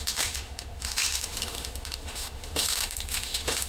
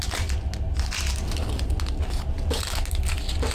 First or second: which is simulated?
first